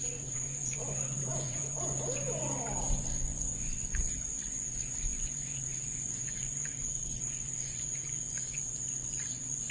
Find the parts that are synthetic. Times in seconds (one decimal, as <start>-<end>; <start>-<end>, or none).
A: 0.0-2.4; 3.0-9.7